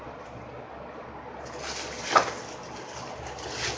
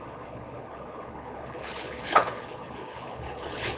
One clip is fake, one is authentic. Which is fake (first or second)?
second